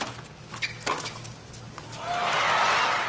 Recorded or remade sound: recorded